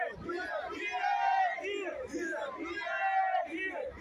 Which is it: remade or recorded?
recorded